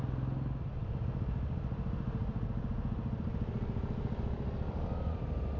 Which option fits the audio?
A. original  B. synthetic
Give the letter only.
A